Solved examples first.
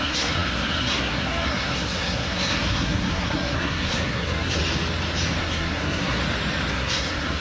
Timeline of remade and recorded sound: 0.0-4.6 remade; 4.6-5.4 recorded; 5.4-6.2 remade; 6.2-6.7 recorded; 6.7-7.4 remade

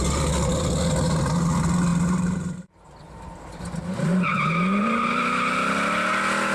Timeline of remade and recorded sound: 0.0-1.9 recorded; 1.9-5.7 remade; 5.7-6.5 recorded

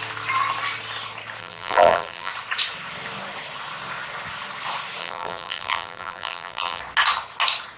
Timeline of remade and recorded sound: 0.0-1.4 recorded; 1.4-2.3 remade; 2.3-5.0 recorded; 5.0-6.8 remade; 6.8-7.8 recorded

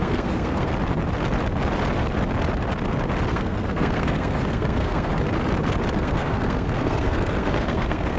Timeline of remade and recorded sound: 0.0-0.7 remade; 0.7-3.3 recorded; 3.3-5.1 remade; 5.1-6.0 recorded; 6.0-8.2 remade

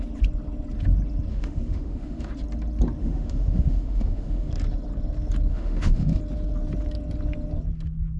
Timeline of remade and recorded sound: 0.0-1.3 recorded; 1.3-2.3 remade; 2.3-3.0 recorded; 3.0-4.5 remade; 4.5-5.5 recorded; 5.5-6.2 remade; 6.2-8.2 recorded

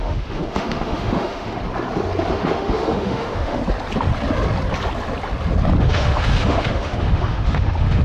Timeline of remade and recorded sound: 0.0-1.6 remade; 1.6-2.3 recorded; 2.3-3.6 remade; 3.6-5.8 recorded; 5.8-8.0 remade

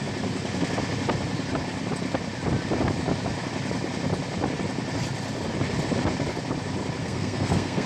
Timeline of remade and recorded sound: 0.0-7.0 recorded; 7.0-7.9 remade

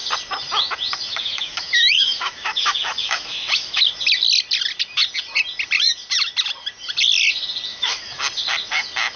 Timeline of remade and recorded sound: 0.0-1.1 recorded; 1.1-3.9 remade; 3.9-7.7 recorded; 7.7-8.2 remade; 8.2-9.2 recorded